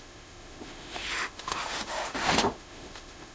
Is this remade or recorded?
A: remade